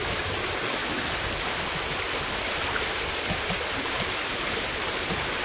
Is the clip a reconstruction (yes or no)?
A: no